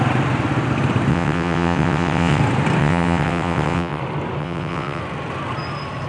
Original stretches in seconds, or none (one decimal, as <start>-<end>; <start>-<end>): 0.0-1.1; 2.4-2.8; 4.0-4.4; 5.0-6.1